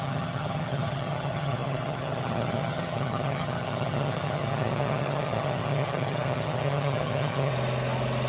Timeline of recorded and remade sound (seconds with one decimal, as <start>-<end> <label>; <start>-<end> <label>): 0.0-7.5 remade; 7.5-8.3 recorded